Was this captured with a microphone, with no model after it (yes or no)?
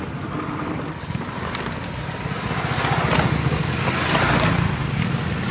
yes